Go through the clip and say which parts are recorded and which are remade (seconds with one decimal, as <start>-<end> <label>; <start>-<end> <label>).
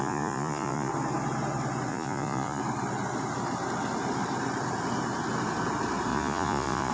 0.0-0.9 remade; 0.9-1.9 recorded; 1.9-2.6 remade; 2.6-6.1 recorded; 6.1-6.9 remade